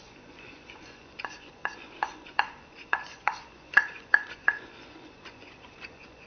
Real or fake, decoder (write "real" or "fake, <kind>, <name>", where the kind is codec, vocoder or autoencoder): fake, vocoder, Vocos